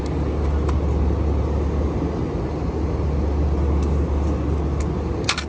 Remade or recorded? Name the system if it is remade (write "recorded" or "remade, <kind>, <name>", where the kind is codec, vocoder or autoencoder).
recorded